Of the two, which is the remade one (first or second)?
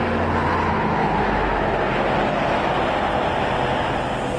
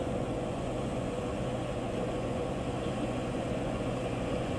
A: second